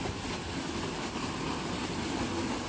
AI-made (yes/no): no